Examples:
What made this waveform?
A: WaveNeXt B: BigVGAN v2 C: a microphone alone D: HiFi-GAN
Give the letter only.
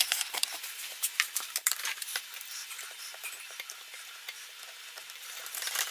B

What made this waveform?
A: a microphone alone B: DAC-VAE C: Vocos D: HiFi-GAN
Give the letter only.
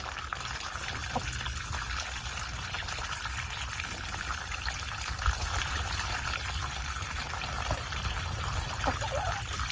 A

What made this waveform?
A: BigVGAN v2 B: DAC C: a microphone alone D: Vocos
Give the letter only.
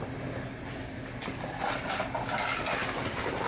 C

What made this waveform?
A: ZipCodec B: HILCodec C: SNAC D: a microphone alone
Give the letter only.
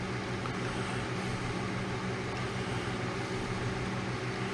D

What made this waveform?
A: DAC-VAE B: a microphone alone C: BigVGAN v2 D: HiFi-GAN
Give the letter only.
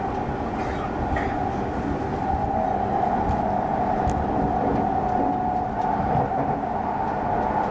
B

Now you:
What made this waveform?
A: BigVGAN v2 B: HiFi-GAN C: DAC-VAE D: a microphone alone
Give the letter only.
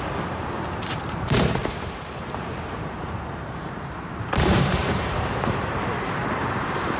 A